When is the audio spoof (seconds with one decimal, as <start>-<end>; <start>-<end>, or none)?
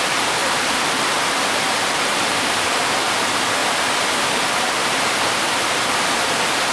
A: 0.0-3.6; 4.3-6.7